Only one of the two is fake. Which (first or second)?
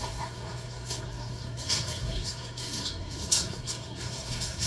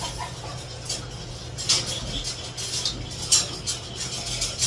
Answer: first